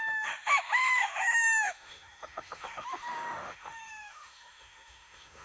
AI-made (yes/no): yes